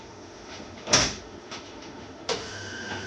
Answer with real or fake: fake